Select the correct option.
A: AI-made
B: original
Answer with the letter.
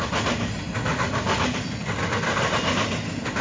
B